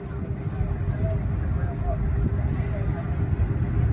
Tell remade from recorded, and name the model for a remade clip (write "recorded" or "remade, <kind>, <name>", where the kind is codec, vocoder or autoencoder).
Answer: recorded